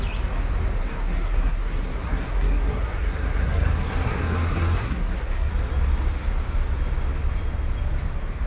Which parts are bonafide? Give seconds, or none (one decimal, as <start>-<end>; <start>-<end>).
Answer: 0.0-0.8; 5.5-8.5